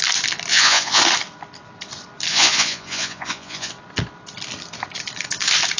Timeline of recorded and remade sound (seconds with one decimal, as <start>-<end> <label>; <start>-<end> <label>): 0.0-0.5 recorded; 0.5-1.0 remade; 1.0-2.3 recorded; 2.3-3.7 remade; 3.7-5.8 recorded